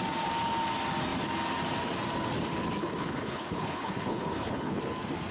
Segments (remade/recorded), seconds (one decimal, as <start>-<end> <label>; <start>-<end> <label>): 0.0-2.8 recorded; 2.8-4.8 remade; 4.8-5.3 recorded

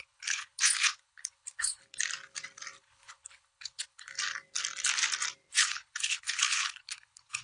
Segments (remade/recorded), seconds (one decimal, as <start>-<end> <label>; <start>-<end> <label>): 0.0-1.8 remade; 1.8-2.8 recorded; 2.8-4.1 remade; 4.1-5.5 recorded; 5.5-7.4 remade

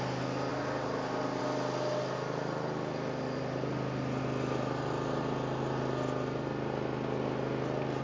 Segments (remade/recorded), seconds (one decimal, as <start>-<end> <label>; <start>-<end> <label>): 0.0-8.0 recorded

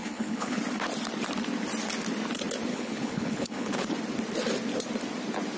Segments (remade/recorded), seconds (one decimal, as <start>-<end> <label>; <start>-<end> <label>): 0.0-0.6 remade; 0.6-2.7 recorded; 2.7-3.9 remade; 3.9-5.6 recorded

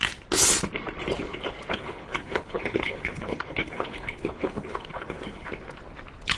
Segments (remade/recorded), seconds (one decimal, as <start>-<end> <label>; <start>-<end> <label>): 0.0-1.7 recorded; 1.7-5.5 remade; 5.5-6.4 recorded

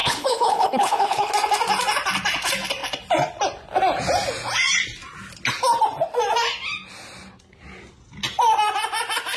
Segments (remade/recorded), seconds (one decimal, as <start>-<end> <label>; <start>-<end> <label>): 0.0-1.3 remade; 1.3-9.4 recorded

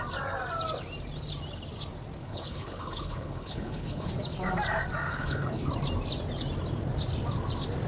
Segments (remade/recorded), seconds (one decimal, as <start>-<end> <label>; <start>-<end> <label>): 0.0-2.2 recorded; 2.2-4.1 remade; 4.1-5.1 recorded; 5.1-5.7 remade; 5.7-7.9 recorded

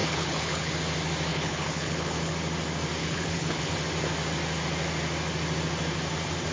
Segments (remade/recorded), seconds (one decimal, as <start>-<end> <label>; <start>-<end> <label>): 0.0-0.7 remade; 0.7-1.3 recorded; 1.3-2.3 remade; 2.3-3.0 recorded; 3.0-3.6 remade; 3.6-6.5 recorded